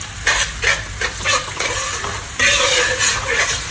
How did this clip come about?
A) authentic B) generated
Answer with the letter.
B